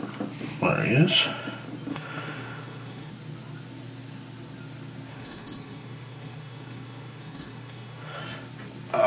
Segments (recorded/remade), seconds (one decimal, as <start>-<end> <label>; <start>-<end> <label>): 0.0-1.9 recorded; 1.9-3.1 remade; 3.1-5.1 recorded; 5.1-8.2 remade; 8.2-9.1 recorded